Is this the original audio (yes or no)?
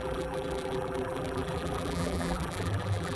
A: no